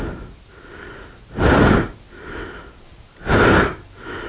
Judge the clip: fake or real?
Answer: real